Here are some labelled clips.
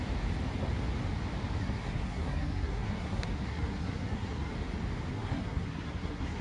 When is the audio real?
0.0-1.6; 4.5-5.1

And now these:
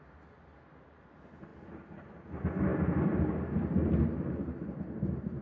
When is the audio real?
0.0-5.4

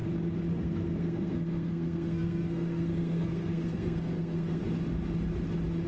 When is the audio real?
0.0-0.5; 4.6-5.9

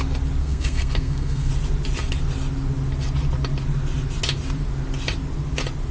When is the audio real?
0.0-0.4; 1.5-5.9

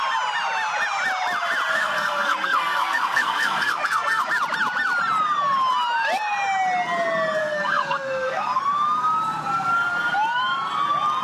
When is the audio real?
0.0-1.7; 4.3-7.4; 8.6-11.2

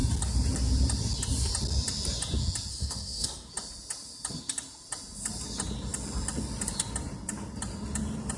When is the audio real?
0.0-2.7; 3.5-8.4

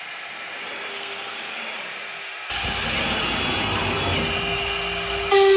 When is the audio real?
0.0-0.9; 1.6-5.6

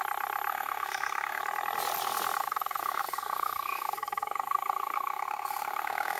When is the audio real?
0.0-0.5; 1.4-2.4